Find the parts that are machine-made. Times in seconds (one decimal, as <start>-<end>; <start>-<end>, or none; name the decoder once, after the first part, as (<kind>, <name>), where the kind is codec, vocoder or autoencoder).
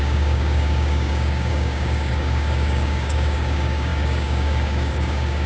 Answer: 0.0-5.5 (codec, DAC)